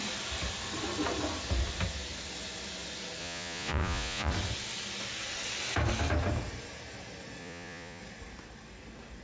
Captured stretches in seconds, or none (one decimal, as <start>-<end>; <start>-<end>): 0.0-3.2; 4.3-7.4; 8.0-9.2